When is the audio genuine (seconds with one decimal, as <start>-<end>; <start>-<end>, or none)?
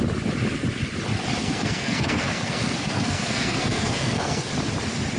0.0-1.4; 4.5-5.2